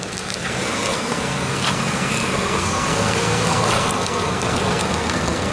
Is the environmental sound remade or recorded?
remade